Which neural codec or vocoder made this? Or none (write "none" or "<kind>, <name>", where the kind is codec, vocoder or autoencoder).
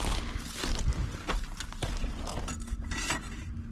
none